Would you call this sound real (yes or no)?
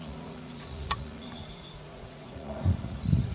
no